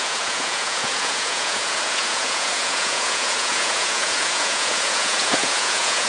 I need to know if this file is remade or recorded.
remade